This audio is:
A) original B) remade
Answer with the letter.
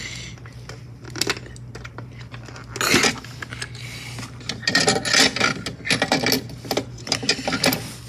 A